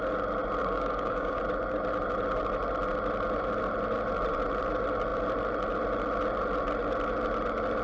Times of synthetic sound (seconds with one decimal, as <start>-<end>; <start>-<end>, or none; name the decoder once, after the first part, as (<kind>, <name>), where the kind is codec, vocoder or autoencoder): 0.6-1.4 (codec, DAC)